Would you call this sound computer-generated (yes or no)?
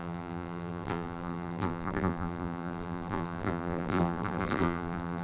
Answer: yes